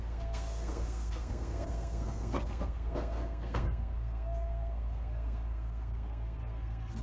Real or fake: fake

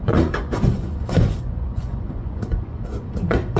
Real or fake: fake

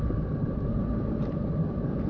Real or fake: real